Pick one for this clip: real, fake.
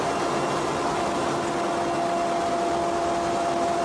real